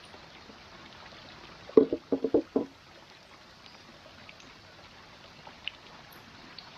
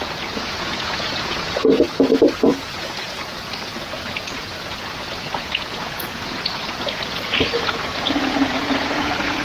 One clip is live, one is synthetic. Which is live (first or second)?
first